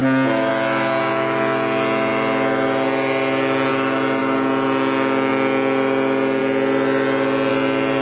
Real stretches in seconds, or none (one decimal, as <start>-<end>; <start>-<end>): 0.0-8.0